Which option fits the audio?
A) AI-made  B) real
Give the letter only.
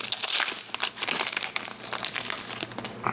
B